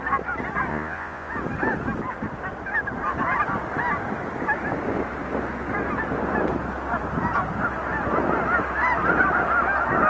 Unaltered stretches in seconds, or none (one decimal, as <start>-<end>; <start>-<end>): 0.0-0.7; 1.3-10.1